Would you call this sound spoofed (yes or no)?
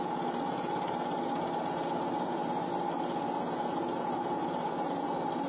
no